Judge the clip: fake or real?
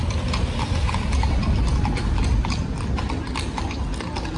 real